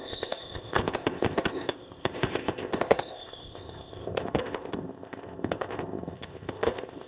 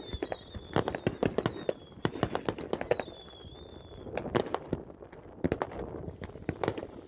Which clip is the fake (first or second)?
first